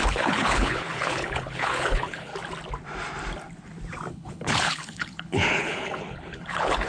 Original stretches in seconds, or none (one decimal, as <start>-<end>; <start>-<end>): 2.3-4.1